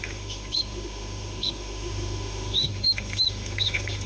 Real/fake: fake